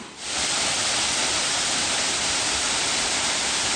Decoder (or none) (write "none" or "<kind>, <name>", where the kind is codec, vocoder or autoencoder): vocoder, BigVGAN v2